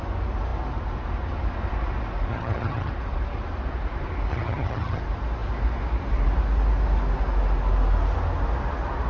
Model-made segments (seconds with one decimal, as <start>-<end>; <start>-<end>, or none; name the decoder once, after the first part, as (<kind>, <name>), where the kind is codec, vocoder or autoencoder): 2.3-2.9 (vocoder, HiFi-GAN); 4.3-5.0